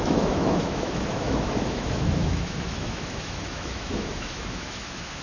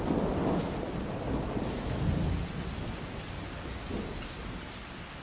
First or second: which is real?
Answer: second